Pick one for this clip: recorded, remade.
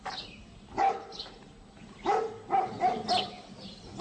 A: recorded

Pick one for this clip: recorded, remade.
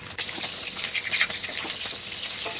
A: recorded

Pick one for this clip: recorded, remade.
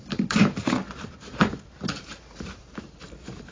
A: remade